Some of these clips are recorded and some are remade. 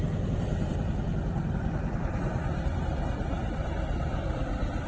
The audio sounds remade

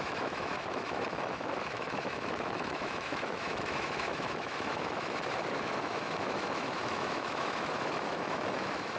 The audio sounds remade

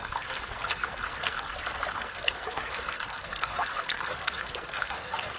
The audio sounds remade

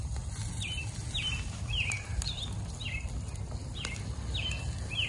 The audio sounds recorded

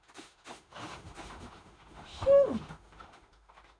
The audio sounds remade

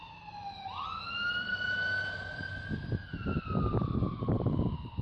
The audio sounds recorded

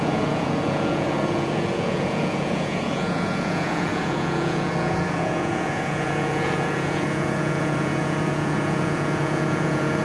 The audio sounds remade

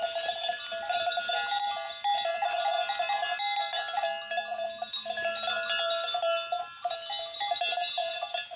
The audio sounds recorded